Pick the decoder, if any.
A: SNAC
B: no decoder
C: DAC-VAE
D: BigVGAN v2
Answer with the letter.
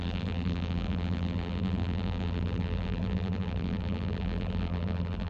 D